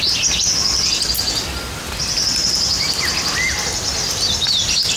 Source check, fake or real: real